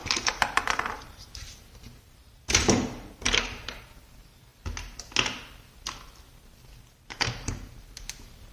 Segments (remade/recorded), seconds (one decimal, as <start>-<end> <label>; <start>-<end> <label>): 0.0-4.5 remade; 4.5-7.0 recorded; 7.0-8.5 remade